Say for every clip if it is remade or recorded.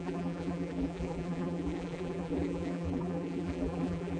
remade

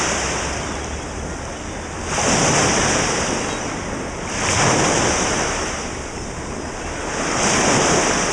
recorded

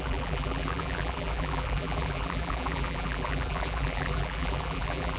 remade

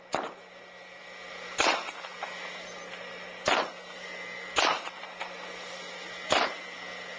recorded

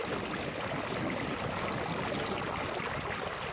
recorded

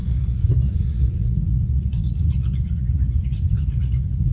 remade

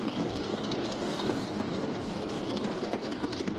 remade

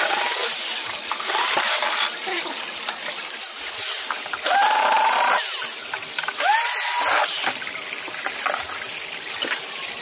recorded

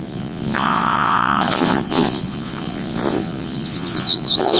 remade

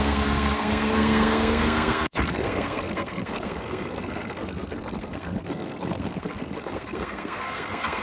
remade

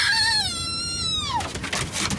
recorded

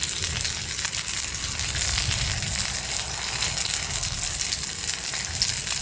recorded